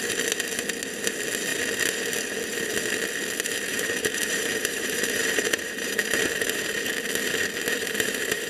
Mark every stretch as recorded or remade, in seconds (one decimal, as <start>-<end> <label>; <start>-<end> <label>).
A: 0.0-3.7 recorded; 3.7-6.9 remade; 6.9-7.8 recorded; 7.8-8.5 remade